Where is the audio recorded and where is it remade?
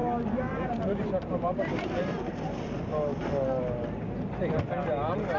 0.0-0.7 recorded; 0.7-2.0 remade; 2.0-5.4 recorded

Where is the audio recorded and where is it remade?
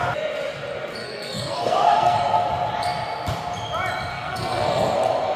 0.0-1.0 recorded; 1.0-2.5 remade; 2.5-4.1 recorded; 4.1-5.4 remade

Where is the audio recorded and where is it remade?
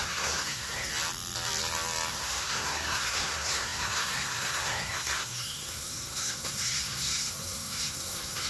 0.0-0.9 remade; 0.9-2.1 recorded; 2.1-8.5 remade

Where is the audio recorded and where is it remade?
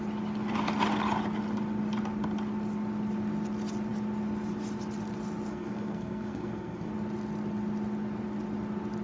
0.0-5.5 recorded; 5.5-6.9 remade; 6.9-9.0 recorded